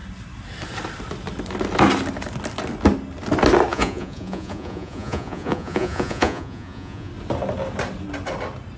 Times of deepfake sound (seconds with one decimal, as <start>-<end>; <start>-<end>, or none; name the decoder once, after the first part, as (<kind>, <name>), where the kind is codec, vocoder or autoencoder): 3.7-7.1 (vocoder, Vocos)